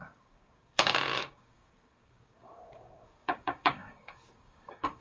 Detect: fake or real fake